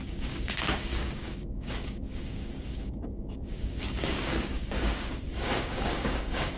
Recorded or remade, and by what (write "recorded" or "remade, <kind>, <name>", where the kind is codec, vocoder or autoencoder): remade, codec, DAC